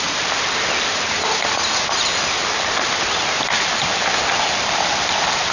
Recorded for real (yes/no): yes